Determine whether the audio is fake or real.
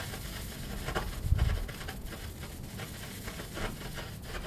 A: real